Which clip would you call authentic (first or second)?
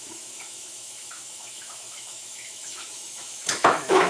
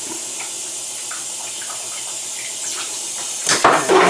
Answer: second